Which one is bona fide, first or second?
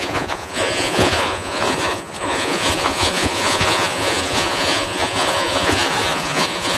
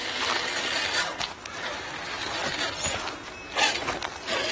second